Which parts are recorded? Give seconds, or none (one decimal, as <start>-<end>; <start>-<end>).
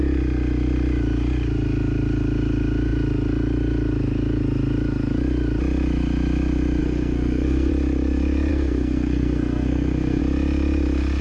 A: 0.0-6.8; 7.7-8.5; 10.2-11.2